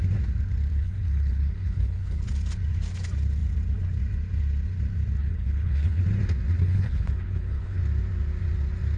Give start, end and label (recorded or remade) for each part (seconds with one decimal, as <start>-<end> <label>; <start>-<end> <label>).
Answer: 0.0-0.7 recorded; 0.7-2.3 remade; 2.3-5.2 recorded; 5.2-6.0 remade; 6.0-6.6 recorded; 6.6-7.8 remade; 7.8-9.0 recorded